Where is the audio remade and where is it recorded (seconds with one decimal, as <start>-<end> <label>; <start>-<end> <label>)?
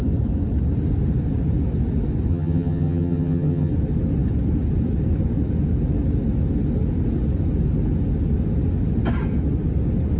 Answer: 0.0-2.3 recorded; 2.3-3.7 remade; 3.7-10.2 recorded